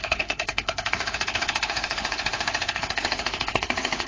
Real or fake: fake